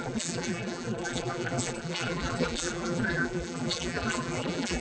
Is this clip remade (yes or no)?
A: yes